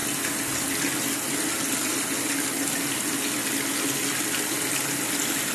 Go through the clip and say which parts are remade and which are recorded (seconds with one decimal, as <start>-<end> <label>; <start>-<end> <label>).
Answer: 0.0-5.5 recorded